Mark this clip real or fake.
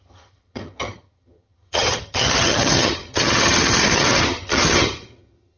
fake